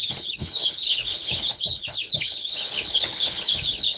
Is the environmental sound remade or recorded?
remade